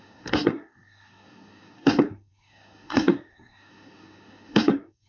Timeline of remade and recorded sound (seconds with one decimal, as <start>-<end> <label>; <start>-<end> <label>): 0.0-5.1 remade